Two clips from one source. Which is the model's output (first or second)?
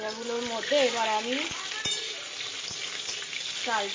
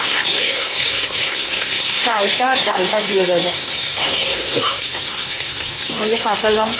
second